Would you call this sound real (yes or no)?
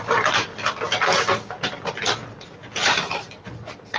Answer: no